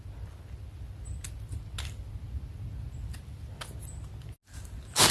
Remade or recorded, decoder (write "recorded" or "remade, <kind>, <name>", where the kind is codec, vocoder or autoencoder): recorded